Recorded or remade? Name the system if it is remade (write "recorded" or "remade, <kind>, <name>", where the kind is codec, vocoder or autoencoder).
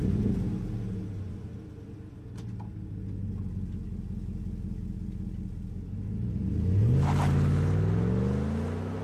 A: recorded